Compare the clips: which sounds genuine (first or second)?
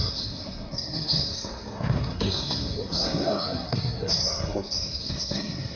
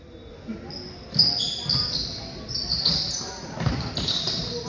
second